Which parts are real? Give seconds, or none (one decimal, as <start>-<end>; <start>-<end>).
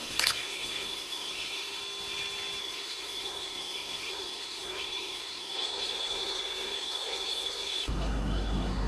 1.8-2.6